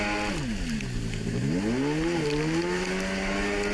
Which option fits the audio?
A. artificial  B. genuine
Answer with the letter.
B